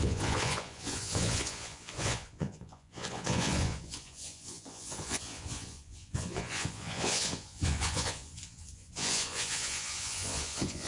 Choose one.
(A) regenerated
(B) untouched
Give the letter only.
A